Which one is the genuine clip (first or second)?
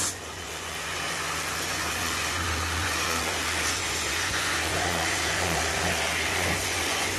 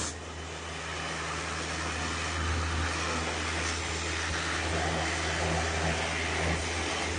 second